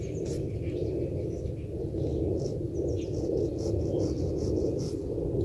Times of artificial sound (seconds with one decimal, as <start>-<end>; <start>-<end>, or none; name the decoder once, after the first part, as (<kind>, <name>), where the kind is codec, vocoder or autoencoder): none